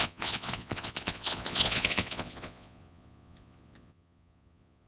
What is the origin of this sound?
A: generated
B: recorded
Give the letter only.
A